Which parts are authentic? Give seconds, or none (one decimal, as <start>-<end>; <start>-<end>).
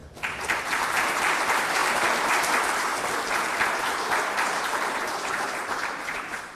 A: 0.0-0.7; 2.9-4.4